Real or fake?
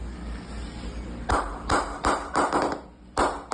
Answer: real